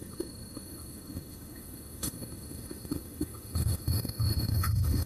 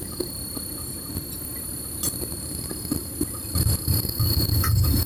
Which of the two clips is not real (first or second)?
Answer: first